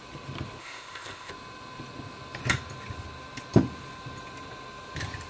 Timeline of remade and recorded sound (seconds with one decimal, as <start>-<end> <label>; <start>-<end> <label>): 0.0-0.6 recorded; 0.6-1.3 remade; 1.3-5.3 recorded